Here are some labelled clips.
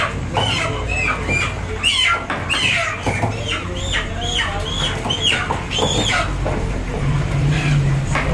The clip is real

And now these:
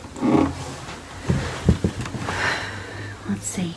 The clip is real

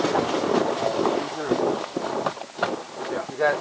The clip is real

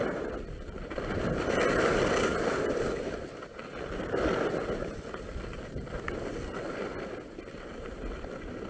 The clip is real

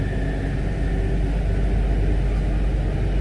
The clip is real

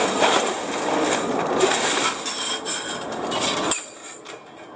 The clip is real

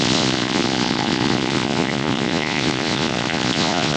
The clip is fake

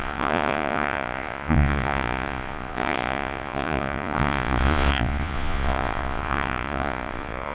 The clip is fake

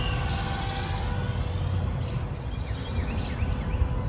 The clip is real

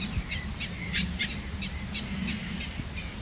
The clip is real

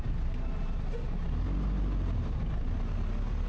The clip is real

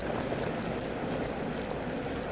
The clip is real